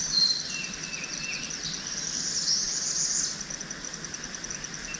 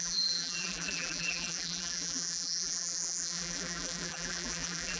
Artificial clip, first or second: second